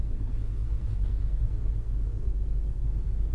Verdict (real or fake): fake